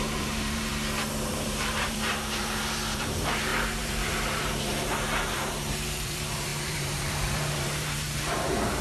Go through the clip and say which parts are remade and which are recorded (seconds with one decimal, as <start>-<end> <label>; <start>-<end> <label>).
0.0-0.7 remade; 0.7-1.3 recorded; 1.3-8.8 remade